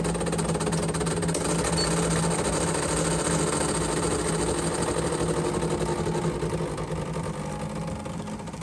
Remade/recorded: recorded